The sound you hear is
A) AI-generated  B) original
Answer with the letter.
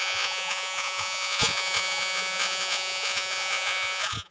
A